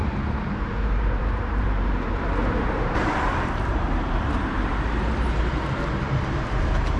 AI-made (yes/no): yes